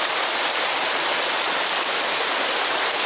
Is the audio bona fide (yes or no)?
yes